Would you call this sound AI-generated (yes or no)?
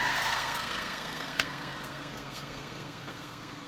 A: yes